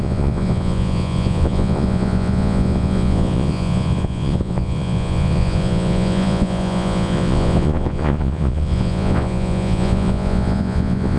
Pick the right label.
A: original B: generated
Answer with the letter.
B